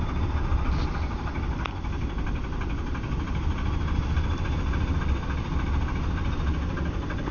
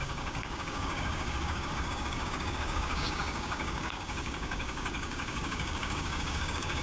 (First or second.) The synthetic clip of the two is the second